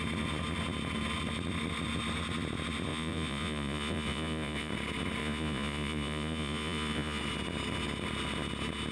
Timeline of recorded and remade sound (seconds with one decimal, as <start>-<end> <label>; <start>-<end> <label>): 0.0-2.9 recorded; 2.9-4.7 remade; 4.7-5.2 recorded; 5.2-7.2 remade; 7.2-8.9 recorded